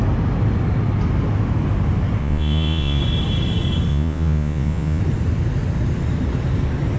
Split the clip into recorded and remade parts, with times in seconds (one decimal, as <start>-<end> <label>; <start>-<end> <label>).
0.0-2.2 recorded; 2.2-3.0 remade; 3.0-3.9 recorded; 3.9-5.0 remade; 5.0-7.0 recorded